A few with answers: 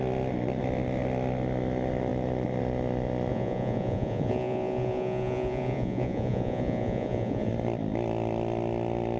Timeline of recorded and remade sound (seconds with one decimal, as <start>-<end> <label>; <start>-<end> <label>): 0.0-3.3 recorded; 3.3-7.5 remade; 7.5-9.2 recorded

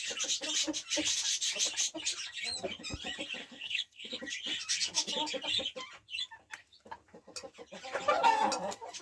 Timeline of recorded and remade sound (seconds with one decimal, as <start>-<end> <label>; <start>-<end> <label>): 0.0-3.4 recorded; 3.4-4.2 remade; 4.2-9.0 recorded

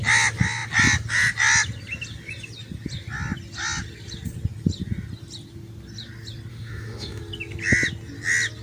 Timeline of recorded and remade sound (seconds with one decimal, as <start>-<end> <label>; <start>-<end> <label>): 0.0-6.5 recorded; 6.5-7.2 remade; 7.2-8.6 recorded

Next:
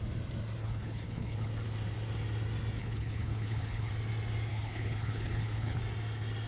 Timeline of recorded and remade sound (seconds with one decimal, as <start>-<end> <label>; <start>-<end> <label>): 0.0-0.6 recorded; 0.6-1.5 remade; 1.5-2.8 recorded; 2.8-3.9 remade; 3.9-4.5 recorded; 4.5-5.8 remade; 5.8-6.5 recorded

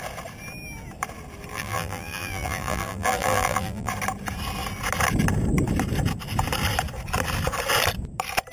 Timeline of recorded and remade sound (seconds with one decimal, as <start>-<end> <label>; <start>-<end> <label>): 0.0-1.5 recorded; 1.5-3.9 remade; 3.9-8.5 recorded

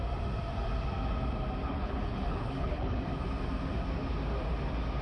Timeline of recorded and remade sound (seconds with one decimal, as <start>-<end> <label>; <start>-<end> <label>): 0.0-1.6 recorded; 1.6-3.0 remade; 3.0-5.0 recorded

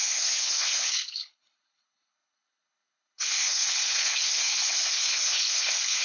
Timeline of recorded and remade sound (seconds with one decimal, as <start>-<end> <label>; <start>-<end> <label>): 0.0-6.0 remade